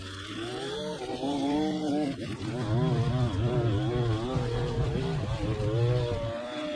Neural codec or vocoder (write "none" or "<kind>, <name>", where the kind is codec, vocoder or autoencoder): none